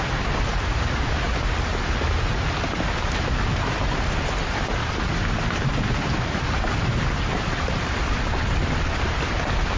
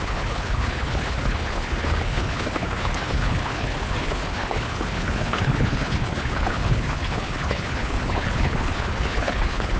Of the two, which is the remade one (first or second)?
second